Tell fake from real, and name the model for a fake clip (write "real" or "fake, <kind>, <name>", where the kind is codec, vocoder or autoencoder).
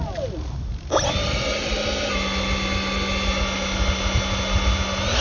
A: real